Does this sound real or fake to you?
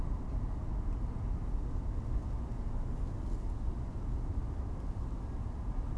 real